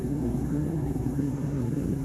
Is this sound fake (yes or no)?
yes